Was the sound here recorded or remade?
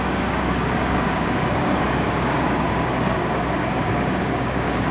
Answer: remade